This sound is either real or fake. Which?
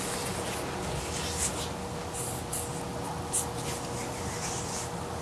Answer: real